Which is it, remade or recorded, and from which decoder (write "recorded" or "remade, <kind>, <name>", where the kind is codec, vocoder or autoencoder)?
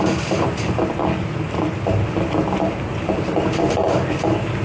recorded